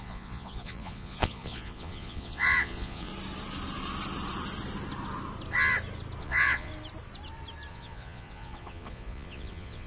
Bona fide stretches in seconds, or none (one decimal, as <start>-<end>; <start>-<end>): 3.1-6.2; 6.7-7.7